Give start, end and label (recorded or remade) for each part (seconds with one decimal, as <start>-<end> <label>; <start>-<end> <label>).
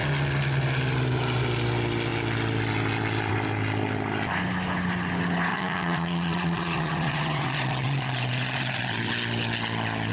0.0-5.5 recorded; 5.5-9.1 remade; 9.1-10.1 recorded